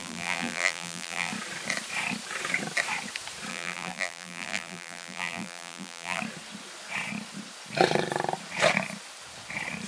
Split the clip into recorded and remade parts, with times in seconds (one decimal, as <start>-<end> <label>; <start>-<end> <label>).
0.0-1.3 remade; 1.3-3.5 recorded; 3.5-6.2 remade; 6.2-9.9 recorded